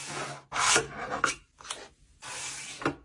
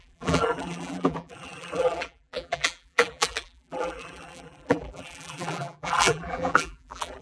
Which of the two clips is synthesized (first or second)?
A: second